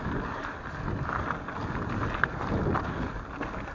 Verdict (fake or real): real